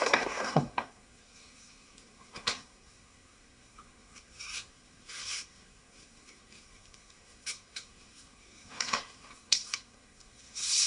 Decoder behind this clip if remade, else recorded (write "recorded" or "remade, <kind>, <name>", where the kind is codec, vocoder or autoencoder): remade, codec, SNAC